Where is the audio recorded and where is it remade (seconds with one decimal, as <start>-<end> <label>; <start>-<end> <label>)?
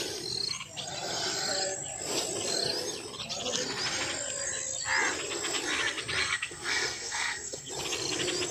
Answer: 0.0-6.2 recorded; 6.2-7.7 remade; 7.7-8.5 recorded